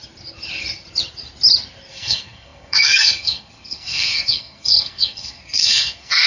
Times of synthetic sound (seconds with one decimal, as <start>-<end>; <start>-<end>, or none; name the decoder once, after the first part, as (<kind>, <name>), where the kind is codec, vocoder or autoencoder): 1.9-6.3 (codec, SNAC)